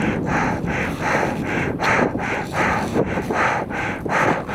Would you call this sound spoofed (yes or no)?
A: no